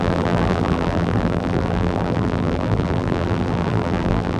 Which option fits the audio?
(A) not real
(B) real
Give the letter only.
A